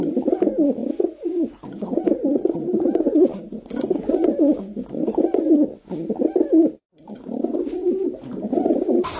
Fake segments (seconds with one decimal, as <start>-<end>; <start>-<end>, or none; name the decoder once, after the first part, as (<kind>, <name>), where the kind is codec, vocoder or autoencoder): 0.8-5.9 (vocoder, Vocos)

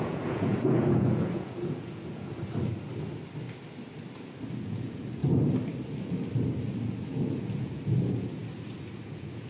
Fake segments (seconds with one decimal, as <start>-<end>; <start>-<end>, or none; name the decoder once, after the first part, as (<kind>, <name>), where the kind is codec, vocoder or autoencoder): 0.0-2.3 (vocoder, Vocos); 4.6-5.2; 7.1-8.4; 9.0-9.5

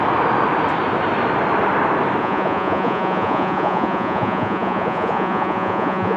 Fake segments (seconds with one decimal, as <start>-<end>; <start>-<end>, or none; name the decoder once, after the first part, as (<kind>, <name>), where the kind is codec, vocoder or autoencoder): 2.2-6.2 (vocoder, Vocos)

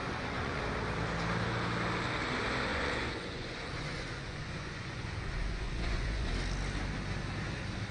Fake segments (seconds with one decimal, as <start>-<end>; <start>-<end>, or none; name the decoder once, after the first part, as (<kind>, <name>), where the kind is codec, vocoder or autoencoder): 0.0-0.6 (vocoder, Vocos); 2.7-6.3

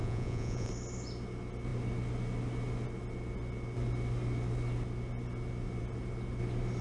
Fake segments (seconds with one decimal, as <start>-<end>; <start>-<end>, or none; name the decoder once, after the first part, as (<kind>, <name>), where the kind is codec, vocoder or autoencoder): 0.0-0.7 (vocoder, Vocos)

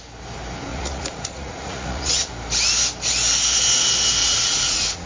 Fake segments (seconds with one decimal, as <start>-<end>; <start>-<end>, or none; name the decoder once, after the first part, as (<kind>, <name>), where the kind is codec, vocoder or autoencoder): 0.7-2.3 (vocoder, Vocos); 4.2-5.1

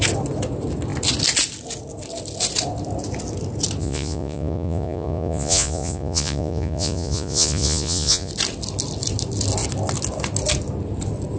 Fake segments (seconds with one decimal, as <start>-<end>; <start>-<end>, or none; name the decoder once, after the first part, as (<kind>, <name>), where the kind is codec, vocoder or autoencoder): 3.8-8.3 (vocoder, Vocos)